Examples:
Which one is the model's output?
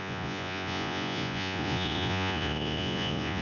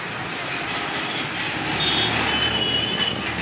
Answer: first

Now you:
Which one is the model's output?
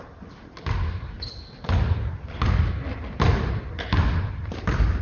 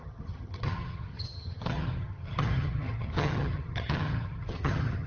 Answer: second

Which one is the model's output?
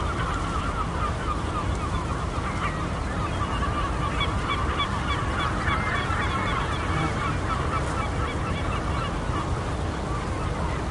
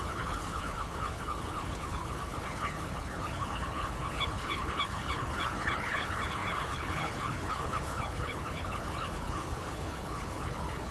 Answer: second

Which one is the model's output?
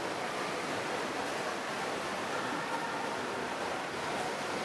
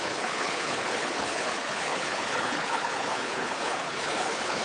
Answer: second